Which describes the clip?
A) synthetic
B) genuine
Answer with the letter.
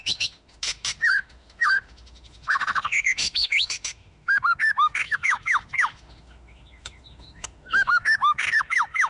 A